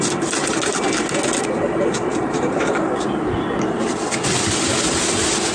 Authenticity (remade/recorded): recorded